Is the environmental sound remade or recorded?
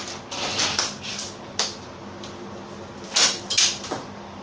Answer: recorded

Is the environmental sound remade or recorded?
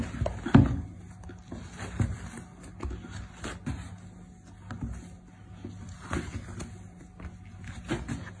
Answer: recorded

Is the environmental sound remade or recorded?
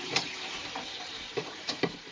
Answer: remade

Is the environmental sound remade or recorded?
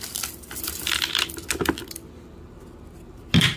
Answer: recorded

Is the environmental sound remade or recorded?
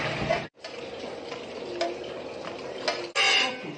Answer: recorded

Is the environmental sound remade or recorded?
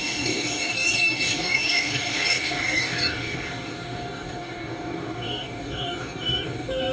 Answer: remade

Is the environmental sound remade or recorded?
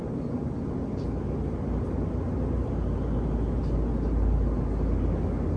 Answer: recorded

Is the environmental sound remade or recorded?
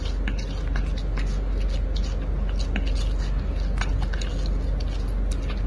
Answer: recorded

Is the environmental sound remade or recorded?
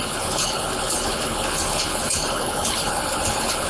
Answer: remade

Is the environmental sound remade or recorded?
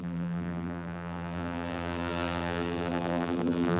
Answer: remade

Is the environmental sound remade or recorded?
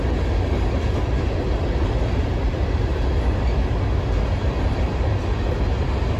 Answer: recorded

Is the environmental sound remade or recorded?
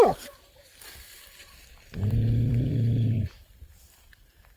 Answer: remade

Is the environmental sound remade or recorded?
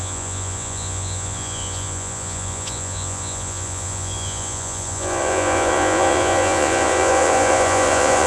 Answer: remade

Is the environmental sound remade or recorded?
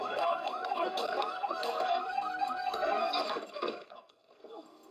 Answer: remade